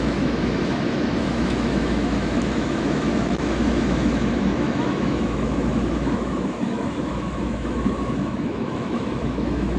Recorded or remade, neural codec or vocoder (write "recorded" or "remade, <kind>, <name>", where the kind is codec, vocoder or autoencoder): remade, autoencoder, DAC-VAE